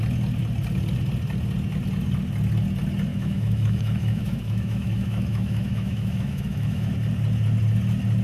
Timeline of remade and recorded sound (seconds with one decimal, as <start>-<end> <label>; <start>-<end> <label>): 0.0-3.1 recorded; 3.1-6.9 remade; 6.9-8.2 recorded

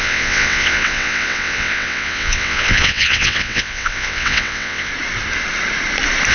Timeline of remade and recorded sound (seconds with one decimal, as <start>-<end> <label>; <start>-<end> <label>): 0.0-4.9 remade; 4.9-6.3 recorded

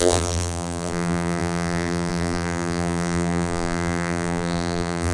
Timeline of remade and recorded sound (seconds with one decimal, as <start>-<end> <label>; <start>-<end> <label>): 0.0-5.1 remade

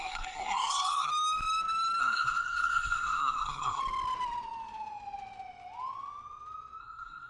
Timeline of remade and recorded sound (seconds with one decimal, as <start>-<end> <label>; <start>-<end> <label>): 0.0-1.1 remade; 1.1-2.0 recorded; 2.0-3.8 remade; 3.8-6.8 recorded; 6.8-7.3 remade

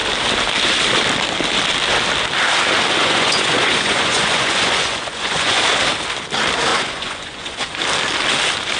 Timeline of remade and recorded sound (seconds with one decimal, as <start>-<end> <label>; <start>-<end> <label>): 0.0-3.0 recorded; 3.0-5.6 remade; 5.6-6.7 recorded; 6.7-7.8 remade; 7.8-8.8 recorded

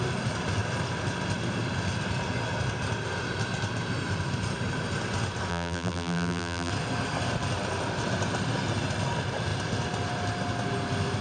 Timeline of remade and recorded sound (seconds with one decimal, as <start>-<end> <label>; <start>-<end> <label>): 0.0-5.5 recorded; 5.5-6.7 remade; 6.7-11.2 recorded